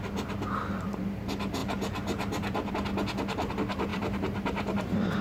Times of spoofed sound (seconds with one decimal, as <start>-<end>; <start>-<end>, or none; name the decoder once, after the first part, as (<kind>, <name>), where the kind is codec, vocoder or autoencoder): 3.9-5.2 (vocoder, BigVGAN v2)